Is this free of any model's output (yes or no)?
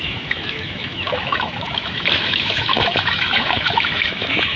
no